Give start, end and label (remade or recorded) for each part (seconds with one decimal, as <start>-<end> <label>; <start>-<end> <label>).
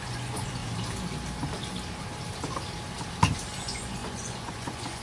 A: 0.0-0.6 remade; 0.6-3.6 recorded; 3.6-5.0 remade